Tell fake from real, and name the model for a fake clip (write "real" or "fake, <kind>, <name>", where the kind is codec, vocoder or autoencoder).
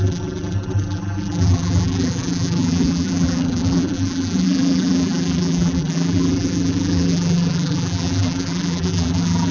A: fake, vocoder, BigVGAN v2